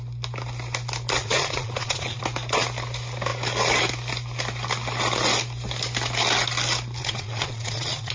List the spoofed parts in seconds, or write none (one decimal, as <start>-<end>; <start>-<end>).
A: 1.2-2.2; 7.0-8.1